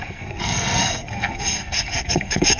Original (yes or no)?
no